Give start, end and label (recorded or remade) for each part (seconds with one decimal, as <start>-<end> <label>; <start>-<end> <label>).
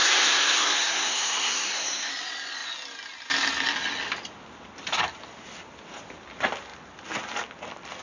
0.0-2.1 remade; 2.1-8.0 recorded